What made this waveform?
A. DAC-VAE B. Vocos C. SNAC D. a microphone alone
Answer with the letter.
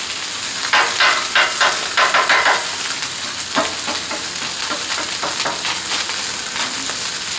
D